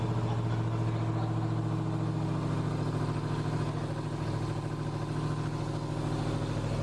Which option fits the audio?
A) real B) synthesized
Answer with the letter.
A